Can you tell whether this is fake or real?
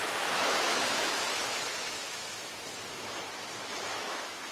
fake